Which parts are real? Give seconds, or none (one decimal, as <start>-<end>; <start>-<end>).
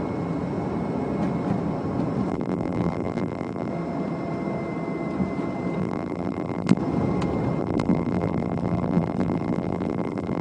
0.0-2.3; 3.7-5.8; 6.8-7.6